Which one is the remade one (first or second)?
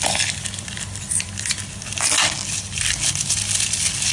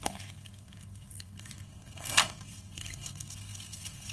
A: second